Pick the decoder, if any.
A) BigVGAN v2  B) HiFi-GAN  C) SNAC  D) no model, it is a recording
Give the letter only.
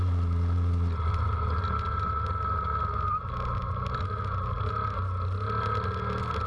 D